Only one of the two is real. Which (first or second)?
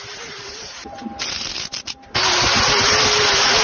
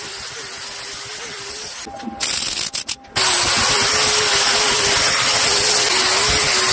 second